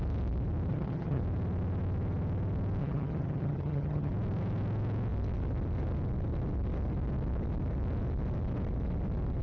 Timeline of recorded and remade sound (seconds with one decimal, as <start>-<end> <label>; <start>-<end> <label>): 0.0-0.7 recorded; 0.7-1.2 remade; 1.2-2.8 recorded; 2.8-4.1 remade; 4.1-9.4 recorded